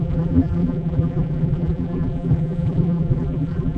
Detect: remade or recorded remade